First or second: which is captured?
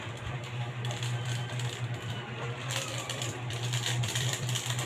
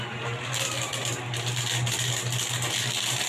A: second